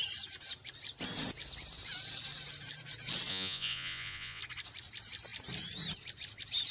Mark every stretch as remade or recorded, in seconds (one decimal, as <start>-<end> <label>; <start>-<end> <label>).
0.0-3.3 recorded; 3.3-4.4 remade; 4.4-6.7 recorded